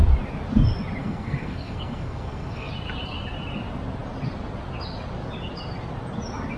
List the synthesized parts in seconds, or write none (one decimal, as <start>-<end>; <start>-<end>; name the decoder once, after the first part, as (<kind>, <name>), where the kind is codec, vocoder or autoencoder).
1.0-2.7 (codec, SNAC)